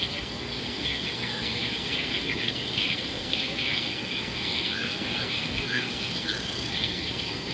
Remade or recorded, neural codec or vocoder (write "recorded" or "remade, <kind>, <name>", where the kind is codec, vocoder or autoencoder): remade, codec, SNAC